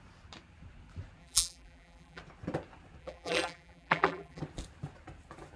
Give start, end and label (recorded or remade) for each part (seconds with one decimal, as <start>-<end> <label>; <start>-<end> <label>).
0.0-1.2 recorded; 1.2-2.2 remade; 2.2-3.0 recorded; 3.0-4.4 remade; 4.4-5.6 recorded

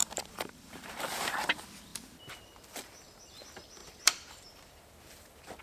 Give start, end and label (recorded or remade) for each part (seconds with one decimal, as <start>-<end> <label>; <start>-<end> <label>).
0.0-1.0 remade; 1.0-3.8 recorded; 3.8-4.8 remade; 4.8-5.6 recorded

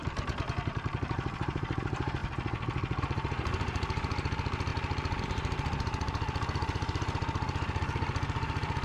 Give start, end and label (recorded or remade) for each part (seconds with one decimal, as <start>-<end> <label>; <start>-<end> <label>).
0.0-2.2 remade; 2.2-3.0 recorded; 3.0-4.7 remade; 4.7-5.2 recorded; 5.2-8.8 remade